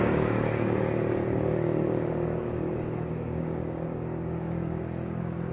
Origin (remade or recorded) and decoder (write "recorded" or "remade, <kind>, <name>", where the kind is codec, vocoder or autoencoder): remade, codec, DAC